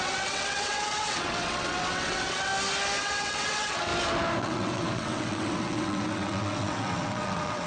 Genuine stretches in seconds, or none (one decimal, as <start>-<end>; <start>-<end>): 2.5-3.0; 3.9-4.4